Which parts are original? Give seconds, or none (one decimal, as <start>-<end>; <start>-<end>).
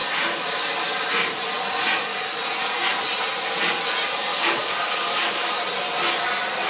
0.0-4.3; 5.6-6.7